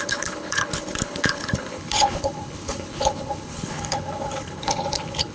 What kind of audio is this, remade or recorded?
remade